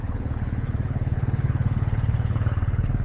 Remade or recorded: remade